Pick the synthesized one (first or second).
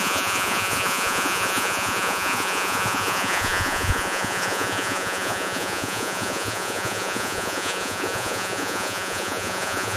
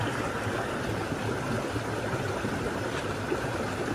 first